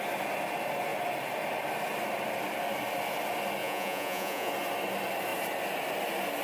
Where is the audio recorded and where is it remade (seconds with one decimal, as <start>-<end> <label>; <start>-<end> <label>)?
0.0-3.6 recorded; 3.6-4.5 remade; 4.5-6.4 recorded